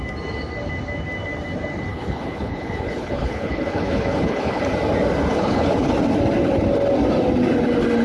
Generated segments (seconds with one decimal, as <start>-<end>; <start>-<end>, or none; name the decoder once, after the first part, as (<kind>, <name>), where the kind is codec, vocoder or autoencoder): 1.9-4.6 (codec, HILCodec); 5.3-5.9